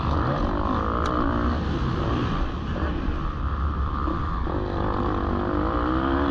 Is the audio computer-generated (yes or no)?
no